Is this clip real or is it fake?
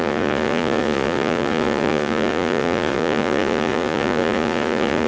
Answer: fake